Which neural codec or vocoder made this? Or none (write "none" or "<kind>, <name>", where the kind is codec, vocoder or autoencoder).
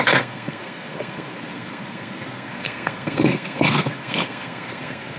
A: codec, SNAC